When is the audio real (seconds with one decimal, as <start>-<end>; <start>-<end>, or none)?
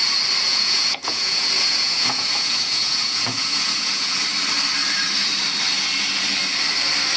0.0-0.5; 4.2-7.2